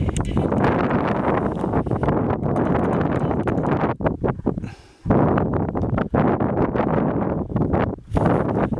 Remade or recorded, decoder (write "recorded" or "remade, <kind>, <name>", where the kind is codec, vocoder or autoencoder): recorded